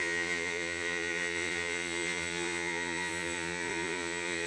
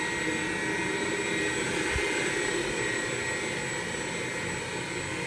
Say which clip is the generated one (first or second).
first